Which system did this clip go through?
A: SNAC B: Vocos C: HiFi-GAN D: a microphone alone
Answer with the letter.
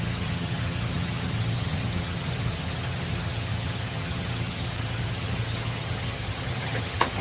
C